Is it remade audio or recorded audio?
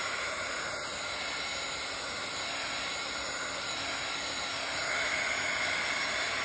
recorded